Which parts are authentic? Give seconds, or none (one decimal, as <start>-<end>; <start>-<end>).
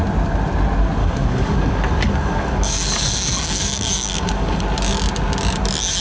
0.0-1.0; 4.6-6.0